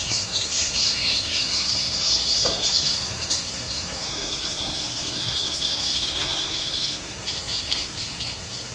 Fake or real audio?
fake